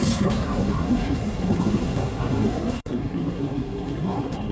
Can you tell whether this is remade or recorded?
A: remade